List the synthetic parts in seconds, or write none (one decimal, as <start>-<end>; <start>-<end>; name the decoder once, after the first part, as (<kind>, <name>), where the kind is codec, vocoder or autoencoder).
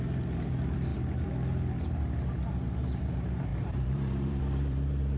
0.0-0.9 (vocoder, BigVGAN v2); 2.0-5.2